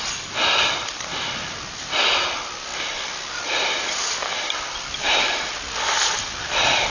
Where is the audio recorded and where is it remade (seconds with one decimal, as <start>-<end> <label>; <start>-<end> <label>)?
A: 0.0-5.0 recorded; 5.0-5.5 remade; 5.5-6.9 recorded